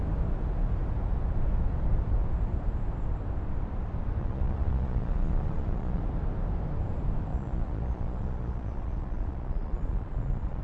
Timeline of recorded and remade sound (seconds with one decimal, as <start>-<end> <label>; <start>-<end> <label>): 0.0-4.2 recorded; 4.2-6.0 remade; 6.0-7.3 recorded; 7.3-10.6 remade